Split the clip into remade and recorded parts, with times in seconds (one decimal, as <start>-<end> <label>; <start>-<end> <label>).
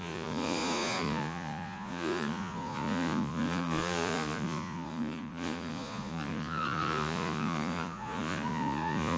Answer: 0.0-9.2 remade